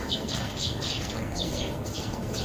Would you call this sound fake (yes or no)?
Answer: yes